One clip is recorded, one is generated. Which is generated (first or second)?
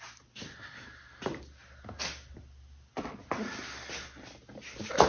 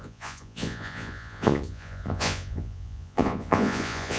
second